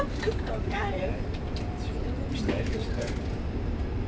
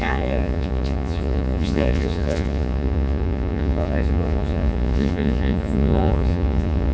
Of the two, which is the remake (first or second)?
second